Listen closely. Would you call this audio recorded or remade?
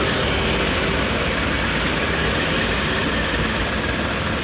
recorded